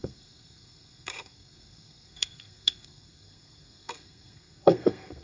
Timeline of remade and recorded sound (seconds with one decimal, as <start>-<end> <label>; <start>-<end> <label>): 0.0-5.2 remade